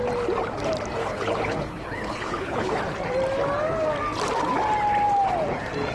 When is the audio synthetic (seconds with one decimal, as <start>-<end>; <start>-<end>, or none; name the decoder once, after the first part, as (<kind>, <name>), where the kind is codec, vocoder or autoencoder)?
1.0-2.8 (codec, HILCodec)